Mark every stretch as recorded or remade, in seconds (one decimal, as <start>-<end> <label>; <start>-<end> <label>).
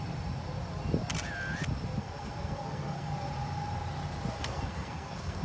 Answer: 0.0-2.0 recorded; 2.0-3.1 remade; 3.1-4.4 recorded; 4.4-5.4 remade